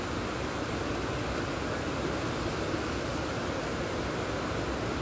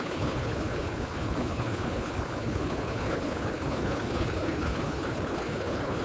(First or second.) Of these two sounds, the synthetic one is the second